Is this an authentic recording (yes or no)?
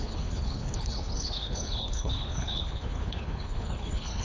no